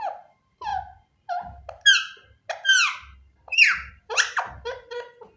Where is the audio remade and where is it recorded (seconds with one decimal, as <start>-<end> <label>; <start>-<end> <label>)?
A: 0.0-0.7 remade; 0.7-3.9 recorded; 3.9-5.4 remade